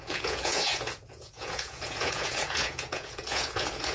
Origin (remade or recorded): remade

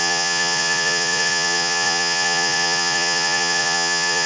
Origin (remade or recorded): remade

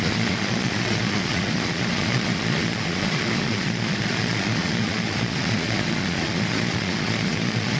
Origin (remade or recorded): remade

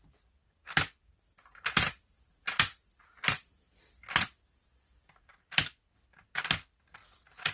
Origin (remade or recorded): recorded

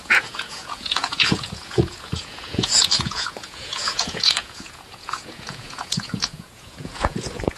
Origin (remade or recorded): remade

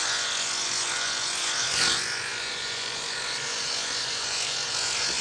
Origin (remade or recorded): remade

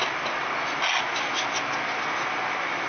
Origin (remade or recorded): recorded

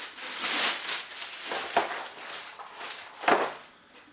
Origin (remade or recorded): recorded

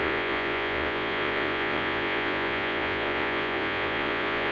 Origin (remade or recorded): remade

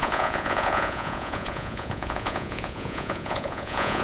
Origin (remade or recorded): remade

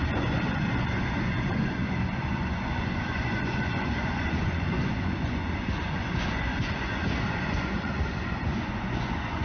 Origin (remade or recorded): remade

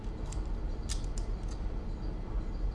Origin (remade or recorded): recorded